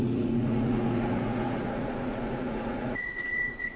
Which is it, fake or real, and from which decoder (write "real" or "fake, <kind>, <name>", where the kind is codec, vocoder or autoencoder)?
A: fake, vocoder, Vocos